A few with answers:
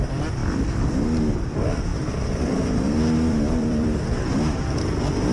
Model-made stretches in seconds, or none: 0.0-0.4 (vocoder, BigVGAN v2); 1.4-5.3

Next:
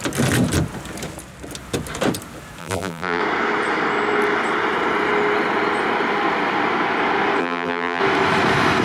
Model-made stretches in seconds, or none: 2.6-3.2 (vocoder, BigVGAN v2); 7.4-8.0